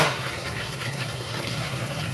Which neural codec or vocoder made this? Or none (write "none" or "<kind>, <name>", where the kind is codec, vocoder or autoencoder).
codec, SNAC